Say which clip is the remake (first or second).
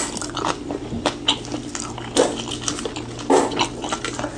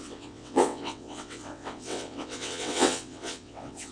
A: second